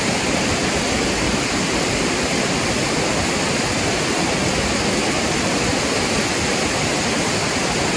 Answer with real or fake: real